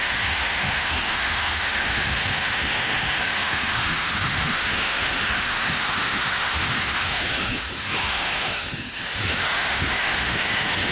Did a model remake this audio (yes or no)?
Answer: yes